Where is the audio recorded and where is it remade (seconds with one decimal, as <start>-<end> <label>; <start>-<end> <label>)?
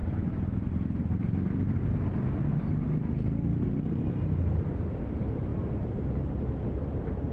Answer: 0.0-1.0 remade; 1.0-3.5 recorded; 3.5-4.0 remade; 4.0-5.5 recorded; 5.5-6.7 remade; 6.7-7.3 recorded